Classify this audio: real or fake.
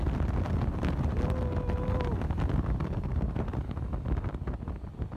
real